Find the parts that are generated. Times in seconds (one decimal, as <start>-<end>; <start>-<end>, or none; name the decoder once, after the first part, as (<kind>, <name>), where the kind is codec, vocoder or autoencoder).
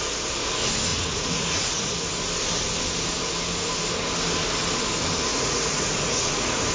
0.9-2.0 (vocoder, Vocos); 5.3-6.7